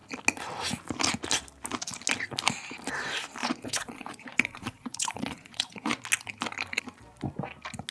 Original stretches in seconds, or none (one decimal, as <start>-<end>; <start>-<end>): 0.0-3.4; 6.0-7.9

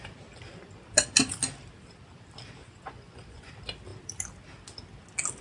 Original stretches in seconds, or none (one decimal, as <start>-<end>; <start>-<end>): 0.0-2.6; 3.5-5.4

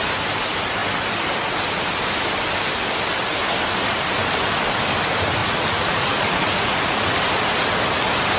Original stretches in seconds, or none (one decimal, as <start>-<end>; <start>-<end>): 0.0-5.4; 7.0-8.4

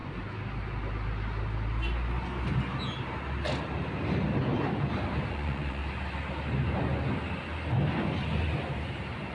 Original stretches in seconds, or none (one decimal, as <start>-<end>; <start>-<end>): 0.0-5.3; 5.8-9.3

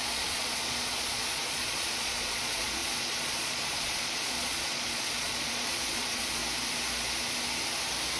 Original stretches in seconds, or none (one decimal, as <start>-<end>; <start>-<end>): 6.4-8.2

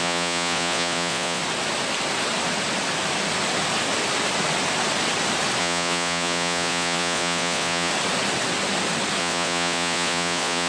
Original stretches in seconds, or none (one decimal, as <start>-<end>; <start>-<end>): 1.4-5.6; 7.9-9.2

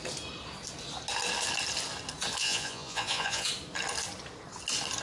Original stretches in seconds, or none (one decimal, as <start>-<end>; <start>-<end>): 0.0-2.4; 3.5-5.0